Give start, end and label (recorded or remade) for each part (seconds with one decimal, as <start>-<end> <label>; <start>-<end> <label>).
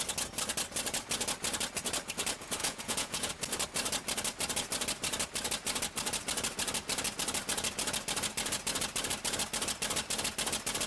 0.0-2.6 recorded; 2.6-3.3 remade; 3.3-10.9 recorded